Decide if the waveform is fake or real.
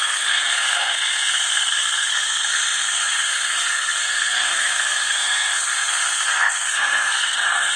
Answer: fake